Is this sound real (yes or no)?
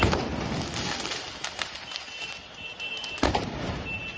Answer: yes